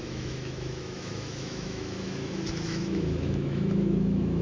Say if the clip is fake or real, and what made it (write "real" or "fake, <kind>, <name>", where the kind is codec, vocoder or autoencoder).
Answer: fake, autoencoder, DAC-VAE